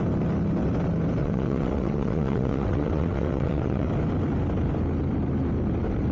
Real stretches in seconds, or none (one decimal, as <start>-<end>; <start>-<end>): 0.0-1.2; 3.9-6.1